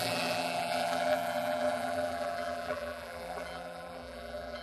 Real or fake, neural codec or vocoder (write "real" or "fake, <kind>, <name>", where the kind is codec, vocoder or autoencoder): fake, vocoder, BigVGAN v2